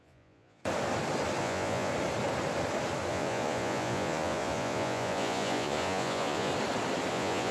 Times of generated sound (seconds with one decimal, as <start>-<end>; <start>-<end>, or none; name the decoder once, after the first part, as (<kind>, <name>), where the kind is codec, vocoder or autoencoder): 0.0-0.6 (vocoder, Vocos); 1.4-1.9; 3.1-6.5; 7.1-7.5